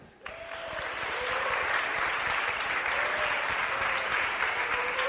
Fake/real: real